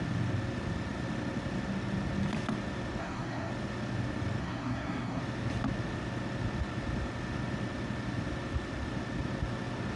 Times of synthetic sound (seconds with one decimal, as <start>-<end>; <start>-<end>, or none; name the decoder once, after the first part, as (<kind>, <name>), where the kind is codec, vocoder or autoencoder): 3.0-3.5 (codec, SNAC); 4.4-5.2